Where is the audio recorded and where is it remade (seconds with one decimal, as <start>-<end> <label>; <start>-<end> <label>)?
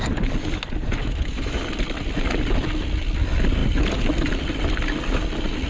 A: 0.0-1.0 recorded; 1.0-1.6 remade; 1.6-5.7 recorded